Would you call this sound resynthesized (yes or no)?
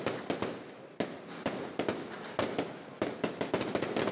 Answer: no